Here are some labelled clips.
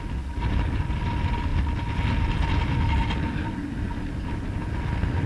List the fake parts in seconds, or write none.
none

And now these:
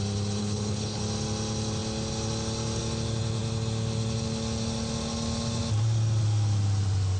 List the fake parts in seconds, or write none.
0.4-1.0 (codec, HILCodec)

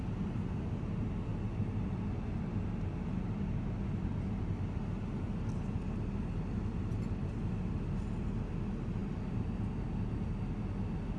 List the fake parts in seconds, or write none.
none

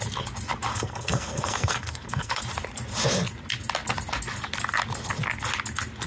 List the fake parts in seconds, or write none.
0.7-2.4 (codec, SNAC)

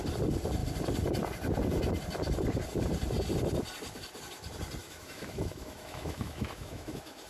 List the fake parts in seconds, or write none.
4.8-7.3 (autoencoder, DAC-VAE)

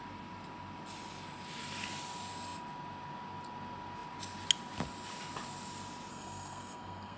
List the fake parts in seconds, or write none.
6.1-7.2 (codec, SNAC)

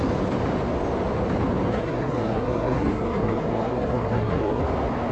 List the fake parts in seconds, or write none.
1.7-4.6 (codec, SNAC)